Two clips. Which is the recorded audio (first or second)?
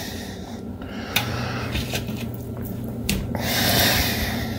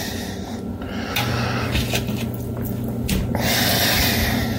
second